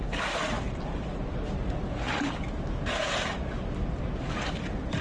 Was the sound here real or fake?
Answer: real